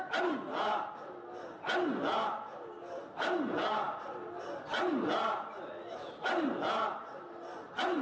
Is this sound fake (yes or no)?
no